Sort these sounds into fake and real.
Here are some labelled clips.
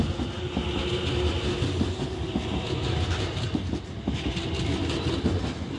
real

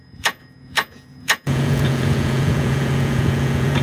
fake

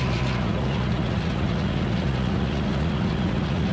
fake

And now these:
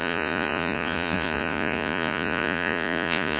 fake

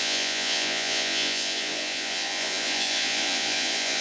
fake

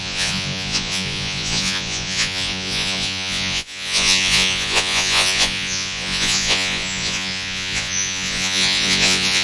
fake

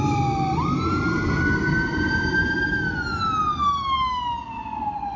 real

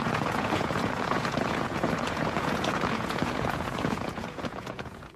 fake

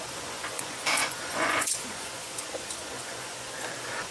fake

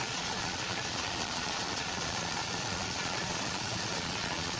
fake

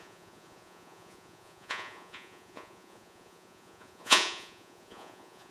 fake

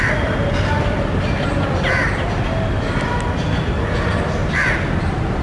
real